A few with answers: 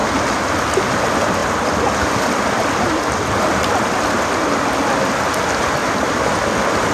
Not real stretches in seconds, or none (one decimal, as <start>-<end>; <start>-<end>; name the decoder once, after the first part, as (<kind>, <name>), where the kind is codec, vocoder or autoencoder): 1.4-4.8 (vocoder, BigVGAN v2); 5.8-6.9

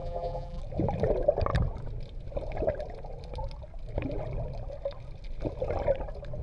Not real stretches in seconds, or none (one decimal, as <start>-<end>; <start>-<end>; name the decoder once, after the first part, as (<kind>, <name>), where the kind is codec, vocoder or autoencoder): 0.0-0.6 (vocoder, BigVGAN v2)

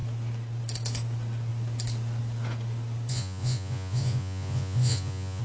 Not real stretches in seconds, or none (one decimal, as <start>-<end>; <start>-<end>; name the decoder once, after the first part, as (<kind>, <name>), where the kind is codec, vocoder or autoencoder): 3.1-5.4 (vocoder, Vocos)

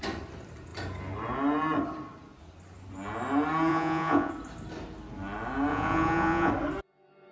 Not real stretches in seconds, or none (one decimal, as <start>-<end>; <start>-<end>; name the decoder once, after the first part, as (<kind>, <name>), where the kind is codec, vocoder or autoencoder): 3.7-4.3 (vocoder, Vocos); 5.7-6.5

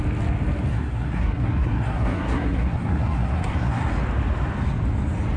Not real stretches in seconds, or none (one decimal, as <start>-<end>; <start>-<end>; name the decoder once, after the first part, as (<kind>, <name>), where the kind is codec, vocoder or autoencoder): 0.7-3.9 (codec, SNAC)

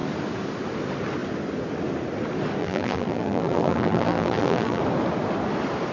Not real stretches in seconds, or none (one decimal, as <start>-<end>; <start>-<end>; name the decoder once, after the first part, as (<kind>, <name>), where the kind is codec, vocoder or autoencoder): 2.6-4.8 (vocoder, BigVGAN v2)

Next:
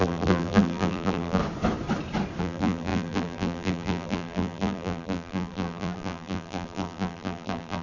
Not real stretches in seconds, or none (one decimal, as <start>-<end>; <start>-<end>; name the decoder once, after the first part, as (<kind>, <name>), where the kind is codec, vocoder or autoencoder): 0.0-1.4 (vocoder, BigVGAN v2); 2.4-7.8

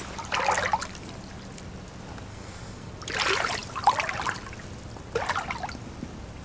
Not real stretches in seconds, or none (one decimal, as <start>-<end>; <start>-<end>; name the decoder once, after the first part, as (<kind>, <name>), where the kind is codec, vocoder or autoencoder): 2.3-2.9 (codec, SNAC)